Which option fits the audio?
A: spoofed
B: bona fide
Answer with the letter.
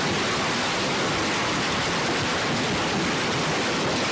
B